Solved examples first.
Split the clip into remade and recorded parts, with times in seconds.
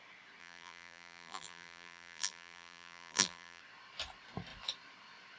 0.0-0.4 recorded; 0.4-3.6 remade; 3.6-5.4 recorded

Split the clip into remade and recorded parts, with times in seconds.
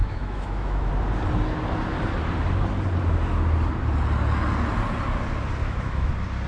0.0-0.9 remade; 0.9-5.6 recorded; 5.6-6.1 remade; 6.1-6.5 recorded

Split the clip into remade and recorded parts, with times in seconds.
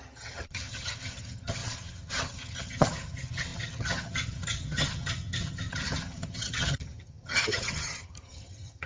0.0-8.9 remade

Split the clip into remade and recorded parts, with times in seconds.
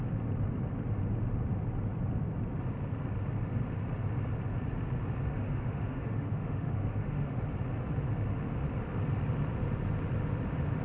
0.0-5.3 recorded; 5.3-7.4 remade; 7.4-10.8 recorded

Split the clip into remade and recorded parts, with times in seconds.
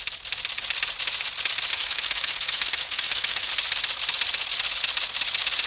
0.0-1.7 recorded; 1.7-3.5 remade; 3.5-5.7 recorded